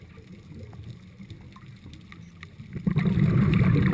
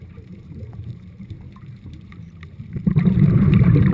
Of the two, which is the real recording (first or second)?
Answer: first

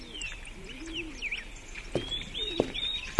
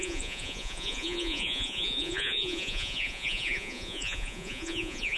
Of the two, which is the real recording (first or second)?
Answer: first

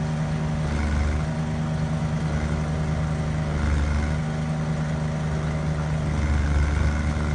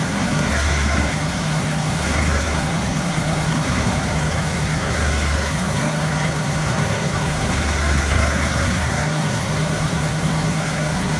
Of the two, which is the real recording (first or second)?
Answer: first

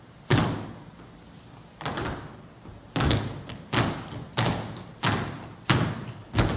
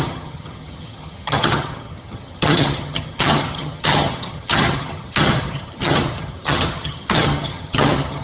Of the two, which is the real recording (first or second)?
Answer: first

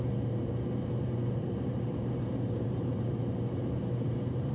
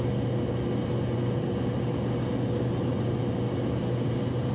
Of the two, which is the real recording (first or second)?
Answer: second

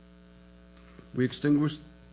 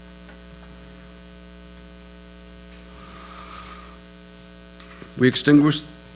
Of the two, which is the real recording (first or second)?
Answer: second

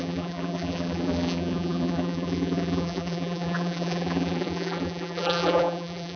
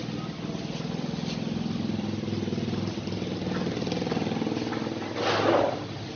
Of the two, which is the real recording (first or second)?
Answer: second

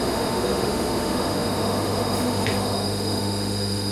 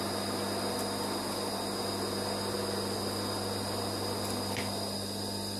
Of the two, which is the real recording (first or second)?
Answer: second